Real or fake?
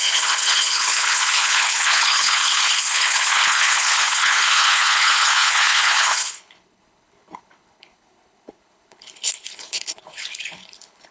fake